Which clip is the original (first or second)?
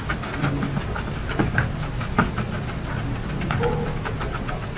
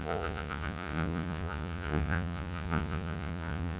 first